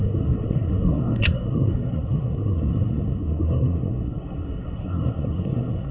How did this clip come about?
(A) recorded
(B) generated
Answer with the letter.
B